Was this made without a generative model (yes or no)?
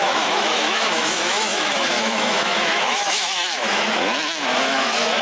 no